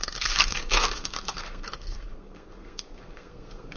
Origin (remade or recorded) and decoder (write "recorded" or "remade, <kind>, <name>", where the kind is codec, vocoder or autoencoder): remade, codec, SNAC